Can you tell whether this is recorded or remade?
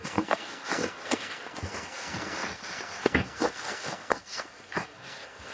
remade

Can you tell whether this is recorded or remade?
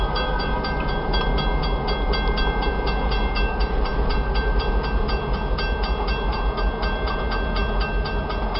recorded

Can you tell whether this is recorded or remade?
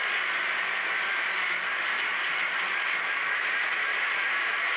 recorded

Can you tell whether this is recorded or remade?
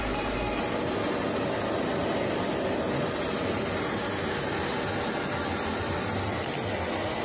recorded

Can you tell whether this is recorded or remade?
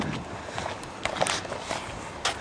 recorded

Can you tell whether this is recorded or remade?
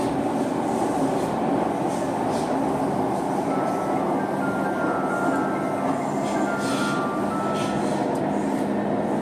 recorded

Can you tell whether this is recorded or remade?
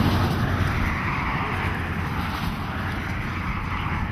recorded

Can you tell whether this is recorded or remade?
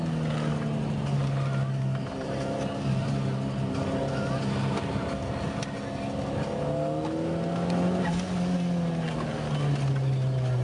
recorded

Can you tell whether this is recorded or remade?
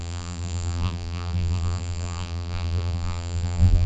remade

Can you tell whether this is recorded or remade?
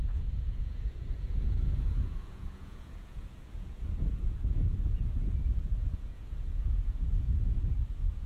remade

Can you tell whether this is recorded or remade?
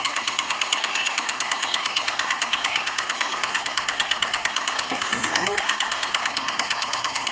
remade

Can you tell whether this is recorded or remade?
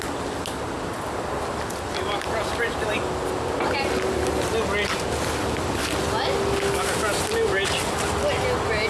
recorded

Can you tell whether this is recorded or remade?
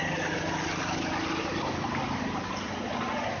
recorded